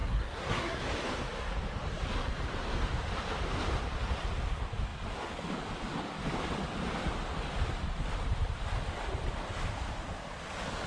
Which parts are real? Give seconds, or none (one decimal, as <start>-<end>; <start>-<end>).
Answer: 0.8-10.9